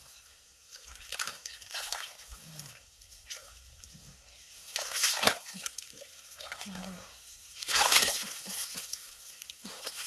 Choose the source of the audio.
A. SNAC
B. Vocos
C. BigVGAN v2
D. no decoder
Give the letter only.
A